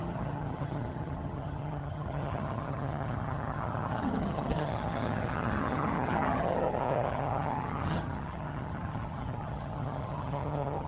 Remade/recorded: remade